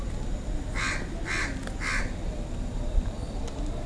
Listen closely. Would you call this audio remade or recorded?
recorded